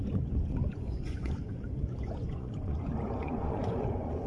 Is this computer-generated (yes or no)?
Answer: yes